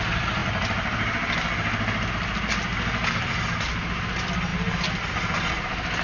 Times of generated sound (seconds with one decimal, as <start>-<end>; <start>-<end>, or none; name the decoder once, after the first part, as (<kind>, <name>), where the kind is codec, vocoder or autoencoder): none

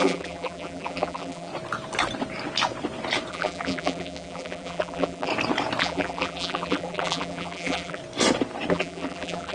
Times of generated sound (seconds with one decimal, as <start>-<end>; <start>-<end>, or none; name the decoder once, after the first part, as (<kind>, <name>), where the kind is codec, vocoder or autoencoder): 0.0-1.5 (vocoder, BigVGAN v2); 3.3-5.3; 5.8-8.0; 8.7-9.5

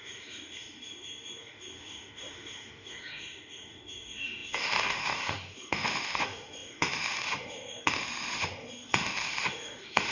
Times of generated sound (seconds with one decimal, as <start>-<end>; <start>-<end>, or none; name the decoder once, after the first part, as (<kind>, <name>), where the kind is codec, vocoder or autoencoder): 0.0-10.1 (autoencoder, DAC-VAE)

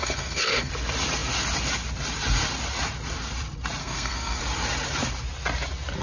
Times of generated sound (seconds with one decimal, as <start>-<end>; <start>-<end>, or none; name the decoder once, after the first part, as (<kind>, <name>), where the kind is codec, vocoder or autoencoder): 0.0-0.7 (codec, SNAC); 3.8-4.4

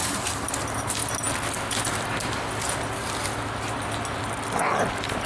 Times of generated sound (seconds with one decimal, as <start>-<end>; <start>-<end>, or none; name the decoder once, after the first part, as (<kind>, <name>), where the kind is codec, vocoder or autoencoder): 0.0-0.6 (vocoder, BigVGAN v2)

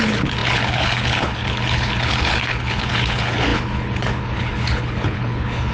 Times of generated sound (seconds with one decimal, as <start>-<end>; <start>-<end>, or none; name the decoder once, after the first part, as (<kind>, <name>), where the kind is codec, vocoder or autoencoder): 0.0-5.7 (codec, HILCodec)

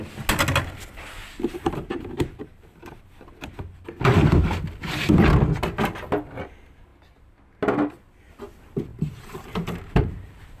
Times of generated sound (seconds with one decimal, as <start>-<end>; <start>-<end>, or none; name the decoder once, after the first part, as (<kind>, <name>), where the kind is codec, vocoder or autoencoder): 1.2-2.9 (vocoder, BigVGAN v2); 8.9-10.6

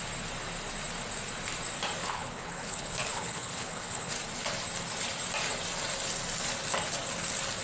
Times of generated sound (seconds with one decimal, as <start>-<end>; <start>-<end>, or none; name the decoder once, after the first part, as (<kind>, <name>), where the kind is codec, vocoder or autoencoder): 2.0-4.1 (codec, HILCodec)